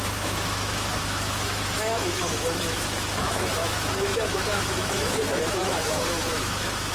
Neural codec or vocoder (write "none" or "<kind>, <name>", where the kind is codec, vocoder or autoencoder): autoencoder, DAC-VAE